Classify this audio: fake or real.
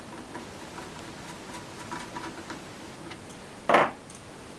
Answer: real